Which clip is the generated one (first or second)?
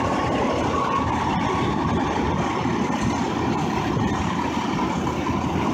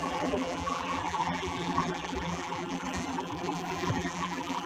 second